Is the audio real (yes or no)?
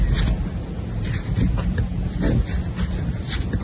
yes